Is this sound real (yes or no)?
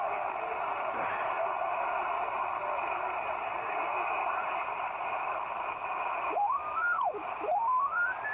yes